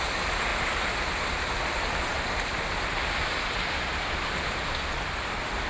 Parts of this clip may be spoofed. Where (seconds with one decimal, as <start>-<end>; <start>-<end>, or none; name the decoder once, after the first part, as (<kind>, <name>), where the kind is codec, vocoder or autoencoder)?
none